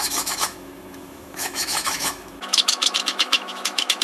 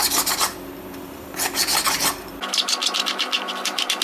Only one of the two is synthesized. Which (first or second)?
first